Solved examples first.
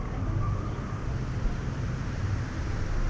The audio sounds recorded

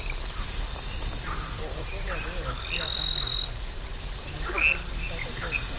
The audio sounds recorded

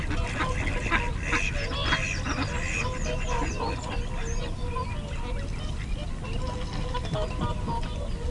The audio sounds recorded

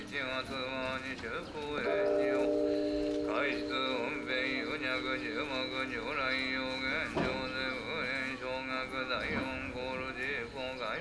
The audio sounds recorded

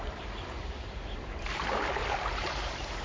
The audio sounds remade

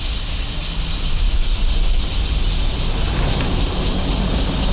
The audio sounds recorded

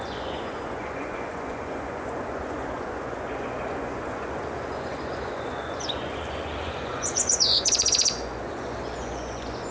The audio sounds remade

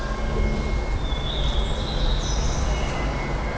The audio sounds recorded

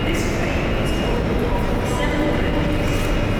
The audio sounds recorded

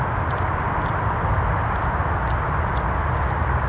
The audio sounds recorded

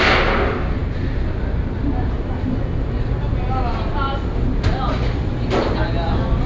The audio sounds recorded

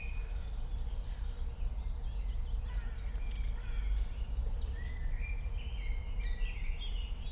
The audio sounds recorded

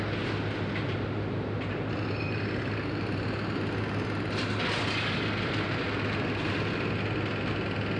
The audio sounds recorded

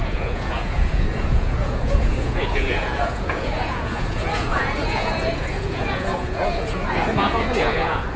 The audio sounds remade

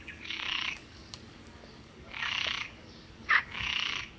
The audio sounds remade